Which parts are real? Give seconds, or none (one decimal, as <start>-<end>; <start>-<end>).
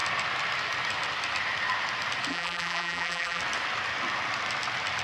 0.0-2.3; 3.4-5.0